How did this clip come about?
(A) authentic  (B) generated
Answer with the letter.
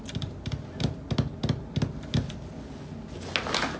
A